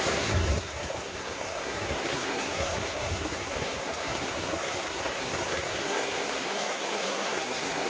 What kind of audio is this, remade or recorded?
remade